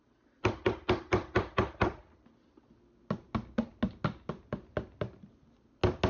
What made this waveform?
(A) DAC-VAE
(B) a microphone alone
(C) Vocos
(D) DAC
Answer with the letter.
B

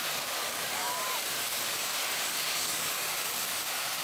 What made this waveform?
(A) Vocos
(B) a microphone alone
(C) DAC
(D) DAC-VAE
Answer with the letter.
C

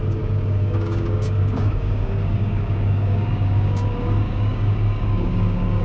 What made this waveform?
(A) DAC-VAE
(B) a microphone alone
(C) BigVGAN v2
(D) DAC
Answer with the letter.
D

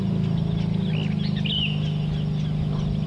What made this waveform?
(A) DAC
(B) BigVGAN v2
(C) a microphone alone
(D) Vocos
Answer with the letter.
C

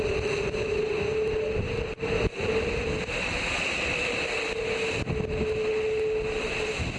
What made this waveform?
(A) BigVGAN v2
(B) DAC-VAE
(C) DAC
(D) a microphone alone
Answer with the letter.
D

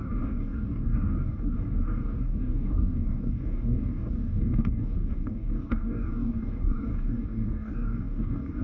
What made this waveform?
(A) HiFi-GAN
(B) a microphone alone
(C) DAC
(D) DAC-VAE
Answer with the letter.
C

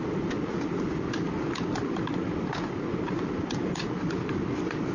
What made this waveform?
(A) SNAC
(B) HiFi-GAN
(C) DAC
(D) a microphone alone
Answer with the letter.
D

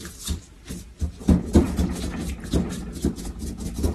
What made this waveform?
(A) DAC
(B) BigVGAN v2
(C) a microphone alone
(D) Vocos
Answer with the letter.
C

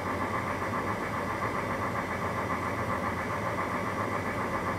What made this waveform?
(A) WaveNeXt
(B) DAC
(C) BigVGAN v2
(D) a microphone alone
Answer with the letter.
D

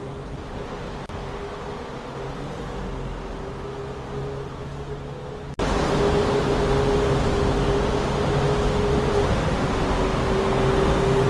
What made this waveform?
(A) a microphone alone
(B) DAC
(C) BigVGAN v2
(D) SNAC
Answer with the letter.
A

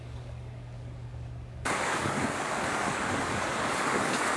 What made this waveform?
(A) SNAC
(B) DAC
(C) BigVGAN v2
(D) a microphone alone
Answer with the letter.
B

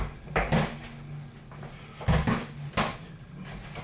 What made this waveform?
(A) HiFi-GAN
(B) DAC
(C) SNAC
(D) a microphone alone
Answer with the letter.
D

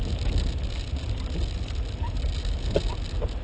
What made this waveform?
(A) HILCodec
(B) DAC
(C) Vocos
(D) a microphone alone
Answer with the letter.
D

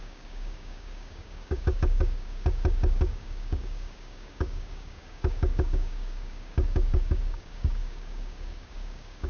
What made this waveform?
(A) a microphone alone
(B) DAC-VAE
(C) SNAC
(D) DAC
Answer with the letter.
D